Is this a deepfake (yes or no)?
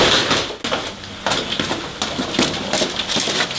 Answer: no